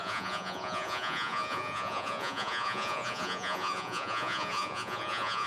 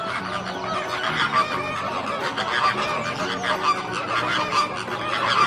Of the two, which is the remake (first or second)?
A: first